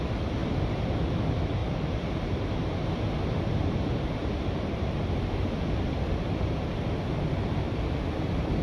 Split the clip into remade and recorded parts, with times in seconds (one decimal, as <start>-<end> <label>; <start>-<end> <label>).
0.0-0.4 recorded; 0.4-1.0 remade; 1.0-1.6 recorded; 1.6-4.7 remade; 4.7-8.6 recorded

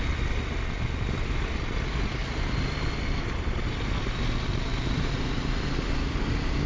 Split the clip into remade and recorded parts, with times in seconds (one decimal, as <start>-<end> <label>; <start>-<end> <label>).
0.0-2.2 recorded; 2.2-3.9 remade; 3.9-4.5 recorded; 4.5-5.9 remade; 5.9-6.7 recorded

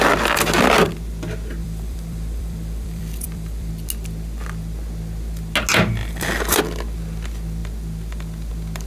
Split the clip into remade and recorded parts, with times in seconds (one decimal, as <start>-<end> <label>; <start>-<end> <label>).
0.0-1.6 recorded; 1.6-3.7 remade; 3.7-6.0 recorded; 6.0-6.6 remade; 6.6-8.9 recorded